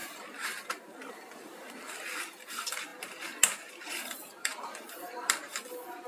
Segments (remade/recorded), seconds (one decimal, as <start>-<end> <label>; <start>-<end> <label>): 0.0-2.9 remade; 2.9-3.7 recorded; 3.7-4.5 remade; 4.5-6.1 recorded